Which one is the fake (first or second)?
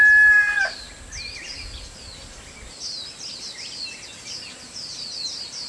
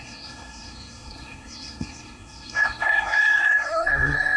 second